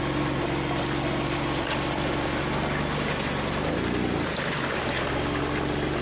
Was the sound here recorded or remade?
recorded